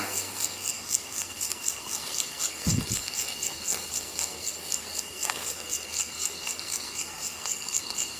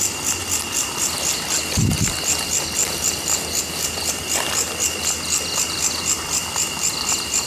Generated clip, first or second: first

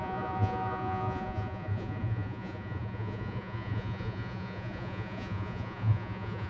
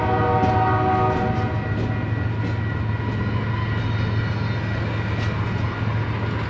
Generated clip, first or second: first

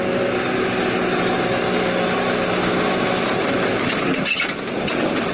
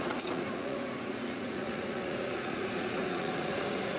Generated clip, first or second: second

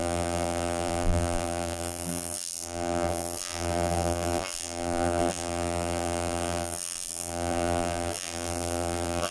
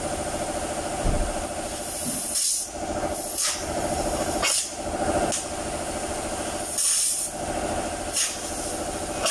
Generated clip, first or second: first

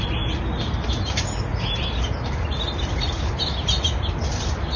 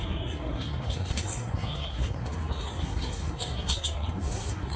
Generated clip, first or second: second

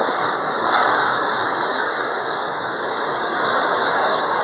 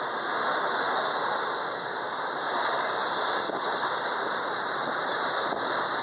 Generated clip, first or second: first